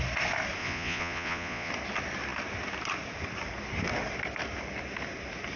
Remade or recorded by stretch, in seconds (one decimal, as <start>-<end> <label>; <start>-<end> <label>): 0.0-0.6 recorded; 0.6-1.7 remade; 1.7-5.6 recorded